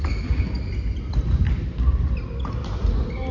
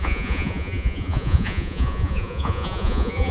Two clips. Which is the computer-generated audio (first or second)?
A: second